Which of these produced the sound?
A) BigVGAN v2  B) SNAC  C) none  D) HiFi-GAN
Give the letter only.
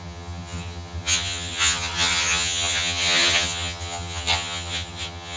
D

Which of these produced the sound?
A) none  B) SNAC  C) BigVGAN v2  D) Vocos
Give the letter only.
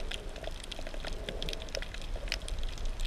A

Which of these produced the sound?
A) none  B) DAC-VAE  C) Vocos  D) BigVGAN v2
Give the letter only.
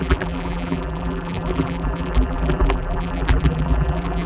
D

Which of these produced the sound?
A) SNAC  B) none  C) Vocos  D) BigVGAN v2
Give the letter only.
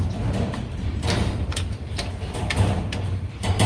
D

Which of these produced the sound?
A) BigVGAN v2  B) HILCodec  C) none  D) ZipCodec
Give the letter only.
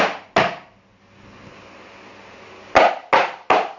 C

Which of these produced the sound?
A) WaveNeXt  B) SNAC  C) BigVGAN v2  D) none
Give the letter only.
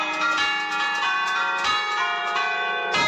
C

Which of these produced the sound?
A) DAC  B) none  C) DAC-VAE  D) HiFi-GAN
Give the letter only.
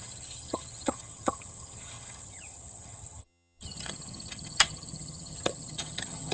D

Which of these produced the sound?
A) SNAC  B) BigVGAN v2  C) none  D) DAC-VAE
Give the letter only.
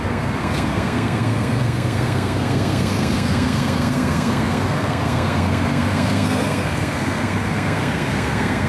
A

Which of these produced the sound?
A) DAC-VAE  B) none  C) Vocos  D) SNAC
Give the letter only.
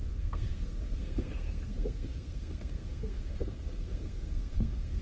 D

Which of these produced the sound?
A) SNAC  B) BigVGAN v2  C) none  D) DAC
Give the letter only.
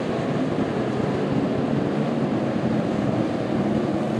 C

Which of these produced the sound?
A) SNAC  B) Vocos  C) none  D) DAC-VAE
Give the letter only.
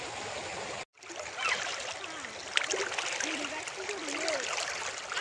C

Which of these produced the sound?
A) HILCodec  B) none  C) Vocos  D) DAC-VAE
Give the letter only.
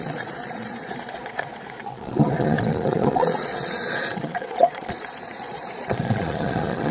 C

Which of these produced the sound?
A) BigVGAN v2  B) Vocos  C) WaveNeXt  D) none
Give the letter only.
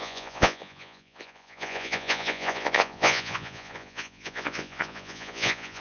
B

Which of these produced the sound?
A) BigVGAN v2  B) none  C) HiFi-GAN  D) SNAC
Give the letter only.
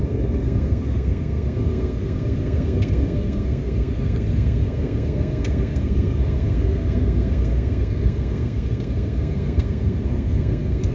D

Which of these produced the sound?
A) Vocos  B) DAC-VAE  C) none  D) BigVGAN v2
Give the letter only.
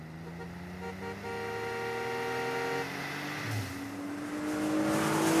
C